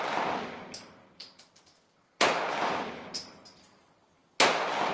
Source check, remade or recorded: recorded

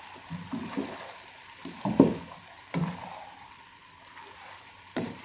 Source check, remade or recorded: remade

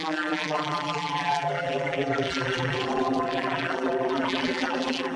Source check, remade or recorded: remade